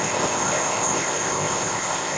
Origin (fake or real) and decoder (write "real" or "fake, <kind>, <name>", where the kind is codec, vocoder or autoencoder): fake, codec, ZipCodec